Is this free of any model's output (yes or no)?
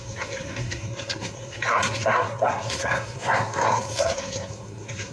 no